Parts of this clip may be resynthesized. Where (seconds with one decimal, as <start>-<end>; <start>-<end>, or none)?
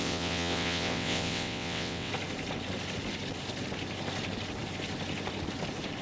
0.0-2.1